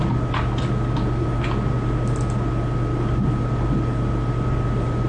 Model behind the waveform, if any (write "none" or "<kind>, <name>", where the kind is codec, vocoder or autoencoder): none